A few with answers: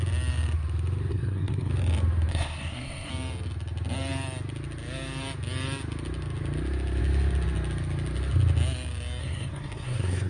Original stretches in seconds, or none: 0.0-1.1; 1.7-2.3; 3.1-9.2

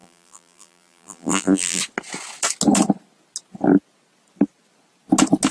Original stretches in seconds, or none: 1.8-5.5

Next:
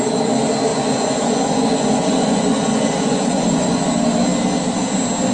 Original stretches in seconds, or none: 0.0-0.7; 3.9-5.3